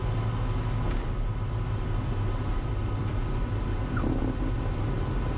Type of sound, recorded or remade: recorded